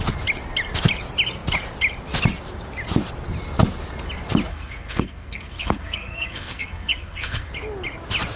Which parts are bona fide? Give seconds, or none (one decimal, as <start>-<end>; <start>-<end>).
0.0-4.5; 7.5-8.4